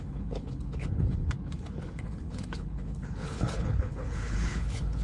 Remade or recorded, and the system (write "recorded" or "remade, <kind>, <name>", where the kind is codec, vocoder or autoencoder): remade, codec, HILCodec